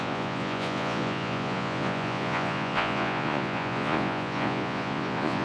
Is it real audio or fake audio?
fake